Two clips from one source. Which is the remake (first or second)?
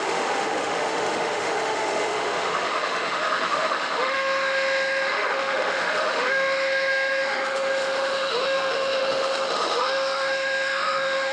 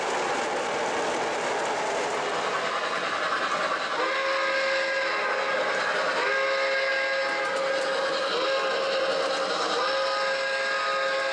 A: first